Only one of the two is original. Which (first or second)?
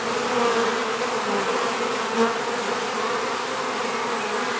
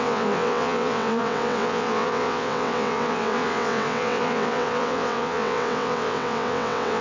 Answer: first